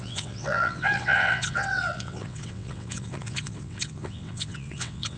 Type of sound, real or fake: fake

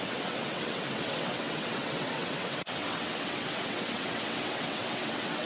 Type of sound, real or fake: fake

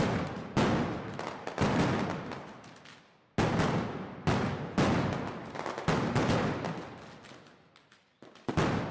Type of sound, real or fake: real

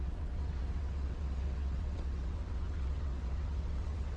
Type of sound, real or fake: fake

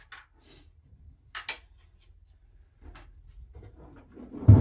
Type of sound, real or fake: real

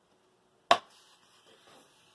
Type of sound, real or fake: real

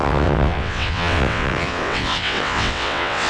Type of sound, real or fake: fake